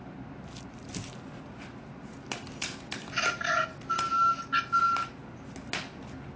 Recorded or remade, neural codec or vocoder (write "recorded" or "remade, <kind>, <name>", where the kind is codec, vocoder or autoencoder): recorded